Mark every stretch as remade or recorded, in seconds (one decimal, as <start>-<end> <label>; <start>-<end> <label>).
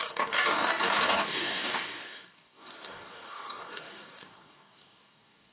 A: 0.0-5.5 remade